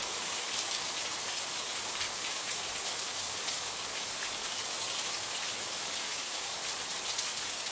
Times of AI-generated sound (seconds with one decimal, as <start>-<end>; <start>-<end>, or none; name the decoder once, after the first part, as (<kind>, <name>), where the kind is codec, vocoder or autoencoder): 0.0-6.6 (codec, DAC); 7.2-7.7